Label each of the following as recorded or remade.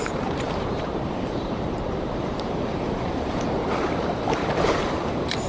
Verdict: remade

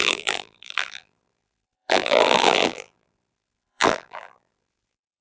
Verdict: remade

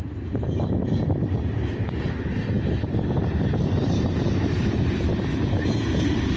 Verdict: recorded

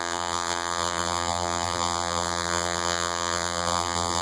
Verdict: remade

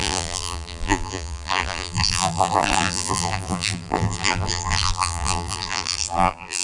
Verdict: remade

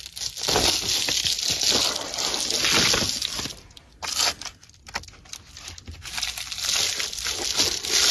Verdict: recorded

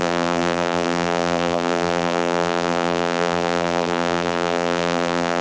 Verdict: remade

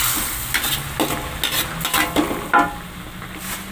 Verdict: recorded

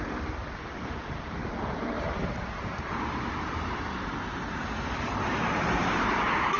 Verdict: remade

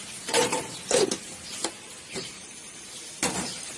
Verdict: remade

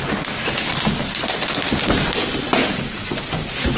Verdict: recorded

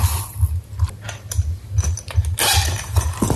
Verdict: recorded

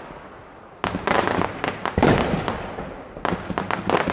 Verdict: recorded